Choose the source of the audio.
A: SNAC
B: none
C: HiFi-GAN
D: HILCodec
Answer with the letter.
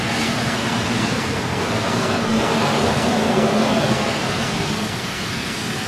A